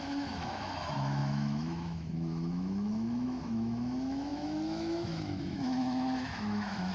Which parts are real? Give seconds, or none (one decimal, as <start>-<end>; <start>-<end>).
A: none